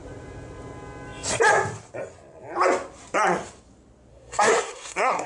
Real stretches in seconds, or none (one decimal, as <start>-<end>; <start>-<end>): 0.0-4.1